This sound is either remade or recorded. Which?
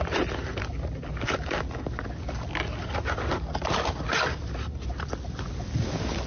remade